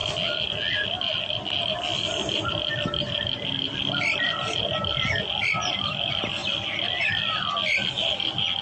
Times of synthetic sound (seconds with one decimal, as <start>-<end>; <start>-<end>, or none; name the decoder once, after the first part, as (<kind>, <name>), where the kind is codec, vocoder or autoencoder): none